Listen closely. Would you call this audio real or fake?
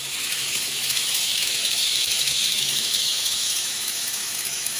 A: fake